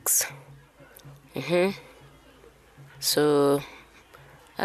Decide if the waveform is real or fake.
real